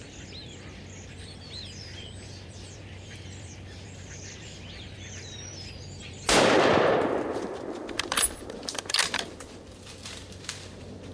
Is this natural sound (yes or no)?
no